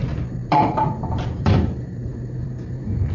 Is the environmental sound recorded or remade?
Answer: remade